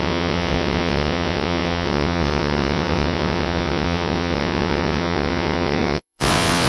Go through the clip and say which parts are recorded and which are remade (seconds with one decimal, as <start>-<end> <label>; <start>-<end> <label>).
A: 0.0-6.7 remade